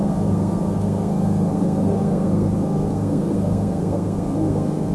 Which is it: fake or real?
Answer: fake